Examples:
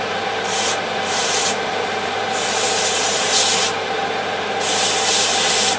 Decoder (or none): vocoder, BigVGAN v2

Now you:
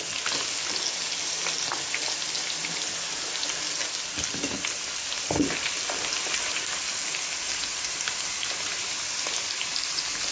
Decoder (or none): none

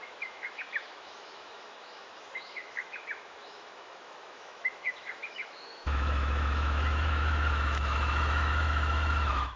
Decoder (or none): autoencoder, DAC-VAE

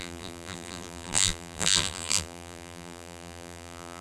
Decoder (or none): vocoder, BigVGAN v2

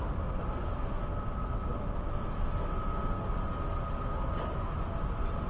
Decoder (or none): none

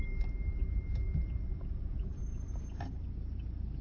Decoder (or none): none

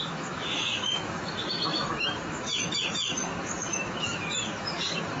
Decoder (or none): autoencoder, DAC-VAE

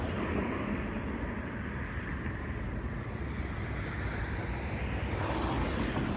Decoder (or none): none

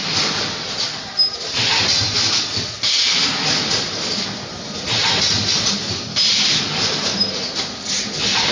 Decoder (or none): none